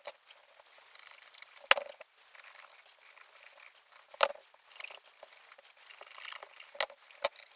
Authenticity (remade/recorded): recorded